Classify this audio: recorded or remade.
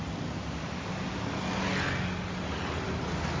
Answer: recorded